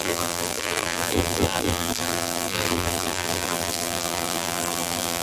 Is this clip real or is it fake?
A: fake